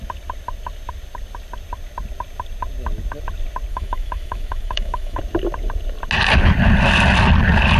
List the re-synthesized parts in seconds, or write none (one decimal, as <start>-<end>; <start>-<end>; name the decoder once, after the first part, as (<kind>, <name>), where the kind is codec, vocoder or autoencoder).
3.7-5.2 (autoencoder, DAC-VAE)